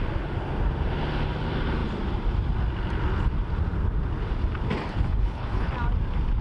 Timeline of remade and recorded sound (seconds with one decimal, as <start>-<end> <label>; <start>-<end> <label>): 0.0-4.9 recorded; 4.9-5.7 remade; 5.7-6.4 recorded